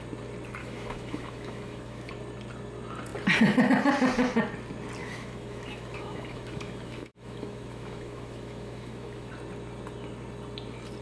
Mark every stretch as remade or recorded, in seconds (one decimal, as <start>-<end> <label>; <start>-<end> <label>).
0.0-0.6 recorded; 0.6-2.1 remade; 2.1-5.0 recorded; 5.0-9.3 remade; 9.3-11.0 recorded